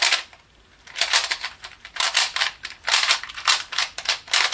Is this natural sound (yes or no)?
yes